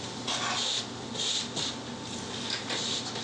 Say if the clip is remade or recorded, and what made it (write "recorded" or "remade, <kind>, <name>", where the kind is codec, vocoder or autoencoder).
recorded